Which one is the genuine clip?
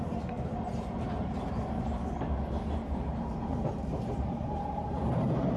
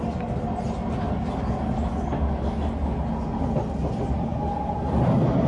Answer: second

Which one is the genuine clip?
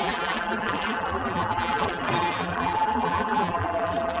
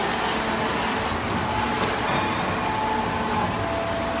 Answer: second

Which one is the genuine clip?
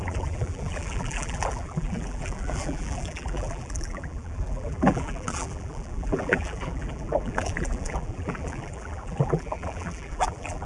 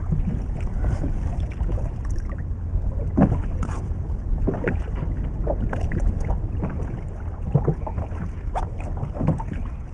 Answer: second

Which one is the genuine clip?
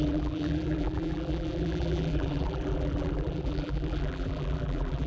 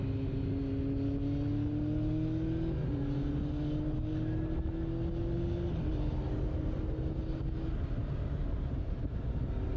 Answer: second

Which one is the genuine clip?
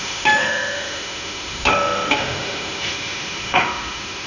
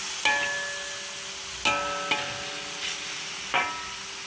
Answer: second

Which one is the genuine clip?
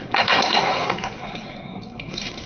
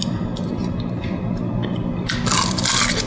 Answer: second